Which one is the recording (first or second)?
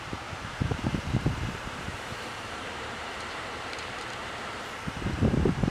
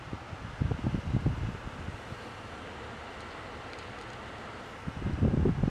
second